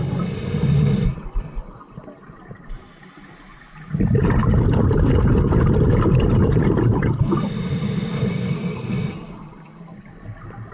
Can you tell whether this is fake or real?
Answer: real